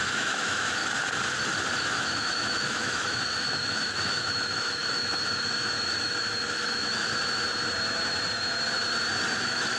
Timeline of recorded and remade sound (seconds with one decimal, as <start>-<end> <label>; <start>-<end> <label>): 0.0-0.8 remade; 0.8-1.7 recorded; 1.7-7.1 remade; 7.1-9.4 recorded; 9.4-9.8 remade